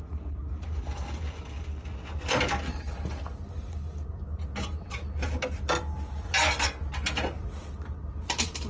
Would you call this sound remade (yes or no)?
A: no